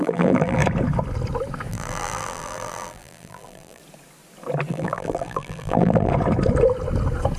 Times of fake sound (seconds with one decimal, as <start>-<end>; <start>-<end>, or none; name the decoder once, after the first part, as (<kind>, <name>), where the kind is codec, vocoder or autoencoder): 0.0-0.6 (vocoder, BigVGAN v2); 1.7-3.8; 4.7-6.1